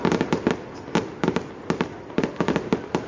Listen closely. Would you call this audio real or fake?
real